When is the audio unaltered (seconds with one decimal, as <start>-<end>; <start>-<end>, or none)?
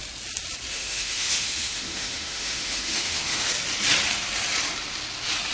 0.0-0.7; 3.5-5.5